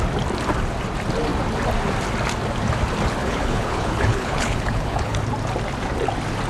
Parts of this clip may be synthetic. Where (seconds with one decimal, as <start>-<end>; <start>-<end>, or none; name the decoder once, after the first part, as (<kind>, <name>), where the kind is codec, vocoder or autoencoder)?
3.2-5.2 (codec, HILCodec)